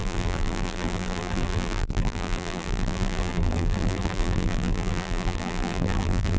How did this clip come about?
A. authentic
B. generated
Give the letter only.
B